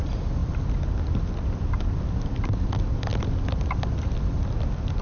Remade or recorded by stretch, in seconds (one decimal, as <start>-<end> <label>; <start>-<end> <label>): 0.0-5.0 recorded